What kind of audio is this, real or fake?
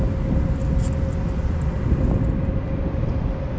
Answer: real